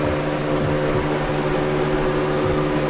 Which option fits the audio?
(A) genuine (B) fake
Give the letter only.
A